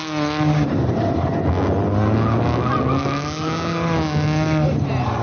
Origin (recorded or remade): recorded